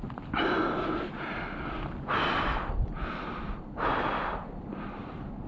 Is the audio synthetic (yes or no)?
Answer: no